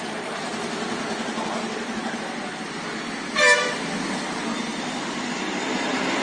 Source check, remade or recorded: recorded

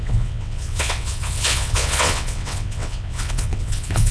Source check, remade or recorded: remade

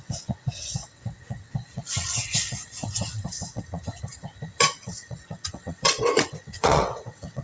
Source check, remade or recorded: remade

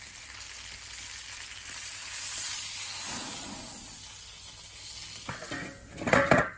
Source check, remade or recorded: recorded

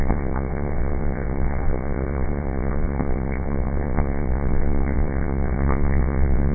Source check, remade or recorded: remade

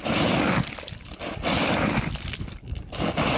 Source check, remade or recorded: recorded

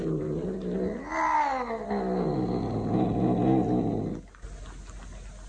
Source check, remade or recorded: recorded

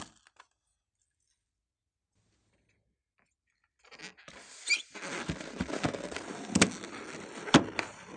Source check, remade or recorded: recorded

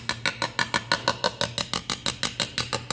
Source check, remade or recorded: recorded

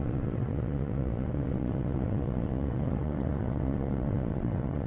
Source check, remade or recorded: remade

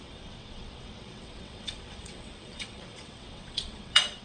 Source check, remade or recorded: remade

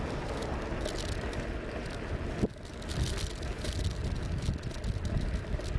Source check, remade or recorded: recorded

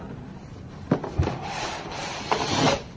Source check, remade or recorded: recorded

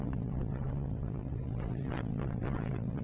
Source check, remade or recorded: remade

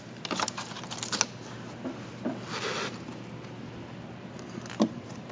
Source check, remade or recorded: recorded